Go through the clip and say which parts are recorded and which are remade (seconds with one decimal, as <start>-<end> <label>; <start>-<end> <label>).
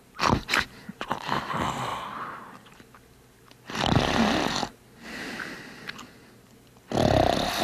0.0-7.6 recorded